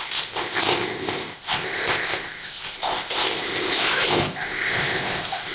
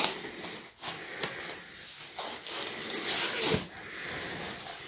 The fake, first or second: first